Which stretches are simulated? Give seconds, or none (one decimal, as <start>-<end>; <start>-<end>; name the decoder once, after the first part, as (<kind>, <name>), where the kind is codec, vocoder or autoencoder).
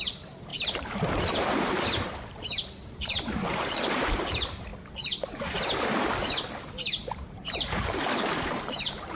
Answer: 0.0-4.7 (vocoder, BigVGAN v2); 6.7-9.1